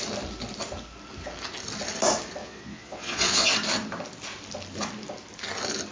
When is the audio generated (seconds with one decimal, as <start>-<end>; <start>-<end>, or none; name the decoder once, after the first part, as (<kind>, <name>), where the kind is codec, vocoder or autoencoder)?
2.4-3.5 (vocoder, Vocos)